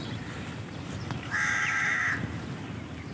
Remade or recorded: remade